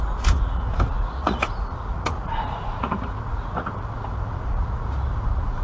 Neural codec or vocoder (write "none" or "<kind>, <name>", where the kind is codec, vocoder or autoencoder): vocoder, Vocos